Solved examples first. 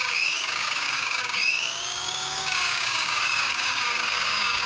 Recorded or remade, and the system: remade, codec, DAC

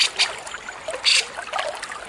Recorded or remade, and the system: recorded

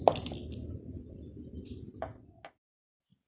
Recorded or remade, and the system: recorded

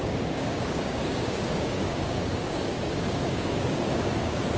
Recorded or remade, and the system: remade, codec, DAC